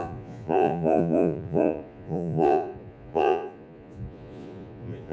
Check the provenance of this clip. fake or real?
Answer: fake